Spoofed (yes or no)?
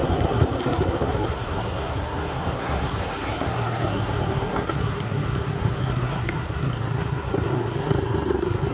yes